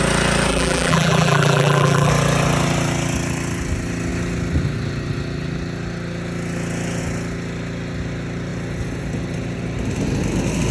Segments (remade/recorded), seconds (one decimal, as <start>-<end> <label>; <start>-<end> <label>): 0.0-0.5 recorded; 0.5-2.1 remade; 2.1-10.7 recorded